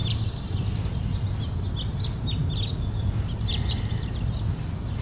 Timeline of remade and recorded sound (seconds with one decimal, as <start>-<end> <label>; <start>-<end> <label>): 0.0-5.0 recorded